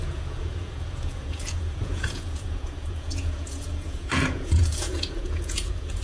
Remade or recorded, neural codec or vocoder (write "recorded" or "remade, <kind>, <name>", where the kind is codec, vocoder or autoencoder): remade, vocoder, Vocos